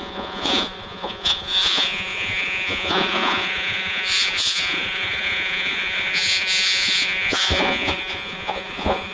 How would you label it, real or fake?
fake